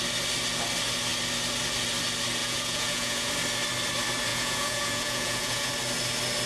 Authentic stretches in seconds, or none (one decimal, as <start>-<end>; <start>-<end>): 0.0-2.4; 3.3-4.3; 5.7-6.5